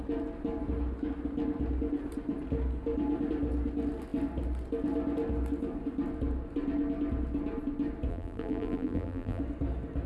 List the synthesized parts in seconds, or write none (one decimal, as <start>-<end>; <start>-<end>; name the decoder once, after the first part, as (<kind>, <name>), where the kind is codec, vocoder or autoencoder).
8.1-9.4 (vocoder, BigVGAN v2)